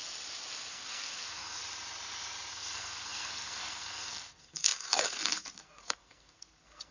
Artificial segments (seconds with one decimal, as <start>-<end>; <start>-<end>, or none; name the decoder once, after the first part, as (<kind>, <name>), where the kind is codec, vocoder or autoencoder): 0.7-1.6 (codec, SNAC); 2.5-6.9